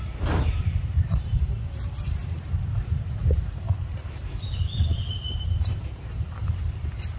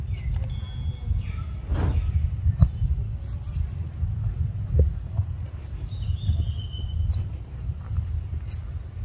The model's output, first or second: first